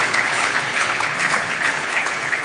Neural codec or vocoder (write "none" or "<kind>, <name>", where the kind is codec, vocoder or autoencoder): codec, HILCodec